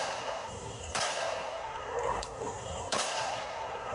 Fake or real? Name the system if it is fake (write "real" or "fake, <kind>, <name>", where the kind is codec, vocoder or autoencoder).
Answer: fake, codec, SNAC